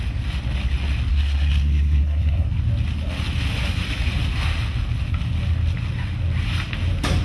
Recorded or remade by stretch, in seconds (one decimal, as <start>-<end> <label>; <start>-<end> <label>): 0.0-1.1 recorded; 1.1-2.5 remade; 2.5-7.2 recorded